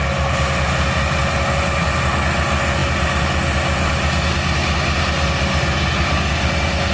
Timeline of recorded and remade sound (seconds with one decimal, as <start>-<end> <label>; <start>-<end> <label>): 0.0-6.9 recorded